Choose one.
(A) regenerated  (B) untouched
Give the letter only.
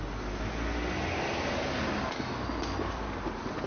B